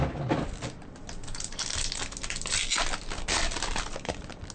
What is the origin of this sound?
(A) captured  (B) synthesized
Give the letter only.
A